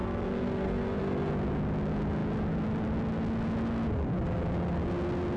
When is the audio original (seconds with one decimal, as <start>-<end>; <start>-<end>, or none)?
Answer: 1.3-5.4